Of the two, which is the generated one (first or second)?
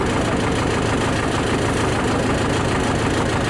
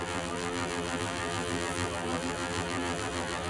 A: second